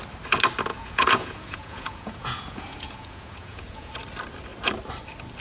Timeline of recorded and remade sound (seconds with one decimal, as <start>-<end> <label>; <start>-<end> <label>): 0.0-0.7 recorded; 0.7-3.9 remade; 3.9-5.4 recorded